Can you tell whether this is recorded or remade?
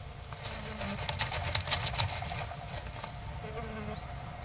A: recorded